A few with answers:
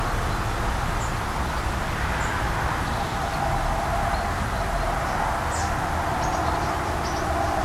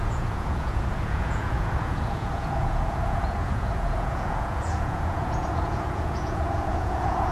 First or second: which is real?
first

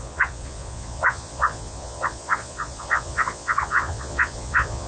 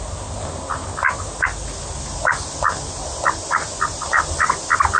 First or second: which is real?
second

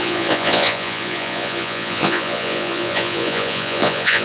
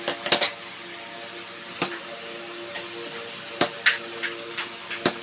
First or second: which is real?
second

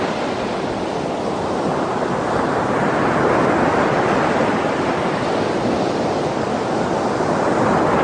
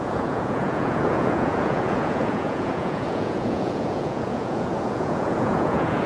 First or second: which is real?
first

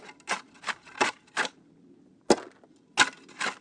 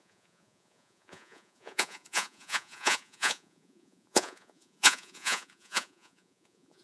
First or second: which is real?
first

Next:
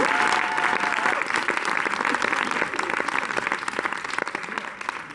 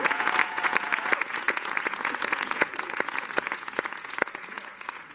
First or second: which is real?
first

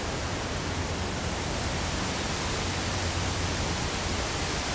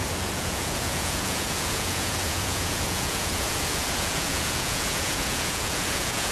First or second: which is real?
first